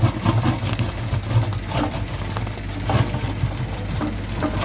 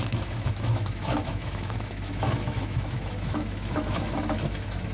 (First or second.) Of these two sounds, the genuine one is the first